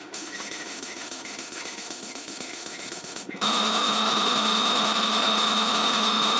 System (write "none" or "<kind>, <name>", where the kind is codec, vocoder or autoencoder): autoencoder, DAC-VAE